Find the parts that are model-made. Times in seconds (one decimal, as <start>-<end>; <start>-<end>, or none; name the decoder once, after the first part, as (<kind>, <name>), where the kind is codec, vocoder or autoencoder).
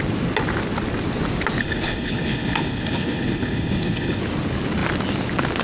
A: 1.6-4.2 (codec, HILCodec)